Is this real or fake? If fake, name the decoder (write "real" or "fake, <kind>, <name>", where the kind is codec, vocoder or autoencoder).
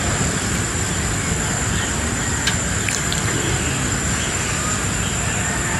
real